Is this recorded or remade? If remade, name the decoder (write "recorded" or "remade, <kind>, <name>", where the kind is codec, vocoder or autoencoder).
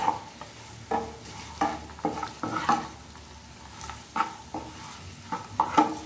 recorded